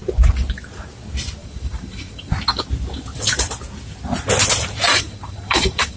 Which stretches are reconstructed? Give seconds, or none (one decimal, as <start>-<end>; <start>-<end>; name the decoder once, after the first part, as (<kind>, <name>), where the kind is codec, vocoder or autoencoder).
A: 1.4-2.3 (vocoder, BigVGAN v2); 4.9-6.0